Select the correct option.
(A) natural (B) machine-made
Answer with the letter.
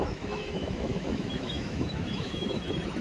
B